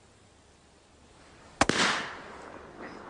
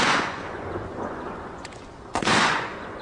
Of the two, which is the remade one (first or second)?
second